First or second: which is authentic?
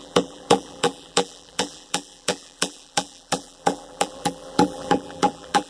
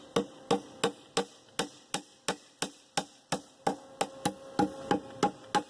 second